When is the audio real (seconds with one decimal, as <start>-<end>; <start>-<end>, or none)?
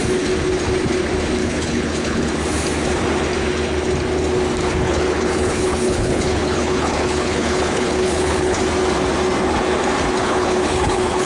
0.0-1.4; 2.3-4.6; 8.6-10.2